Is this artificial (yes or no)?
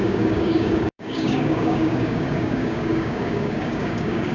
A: yes